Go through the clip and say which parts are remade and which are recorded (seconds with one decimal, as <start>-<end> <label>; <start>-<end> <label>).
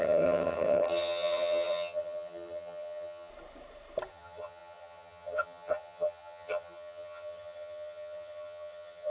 0.0-3.3 remade; 3.3-4.1 recorded; 4.1-9.1 remade